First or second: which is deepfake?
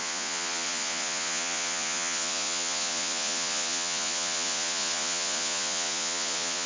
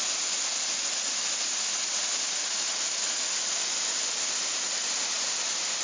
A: first